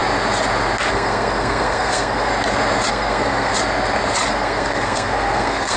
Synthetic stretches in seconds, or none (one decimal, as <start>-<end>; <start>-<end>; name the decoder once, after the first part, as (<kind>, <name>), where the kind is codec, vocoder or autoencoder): 0.9-2.3 (codec, SNAC); 2.9-3.5; 4.3-5.8